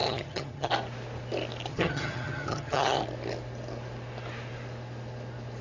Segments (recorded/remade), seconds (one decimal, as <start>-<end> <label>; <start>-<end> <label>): 0.0-0.7 remade; 0.7-1.7 recorded; 1.7-3.0 remade; 3.0-5.6 recorded